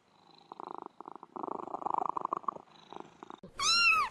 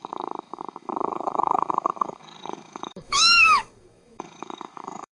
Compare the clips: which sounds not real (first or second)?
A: second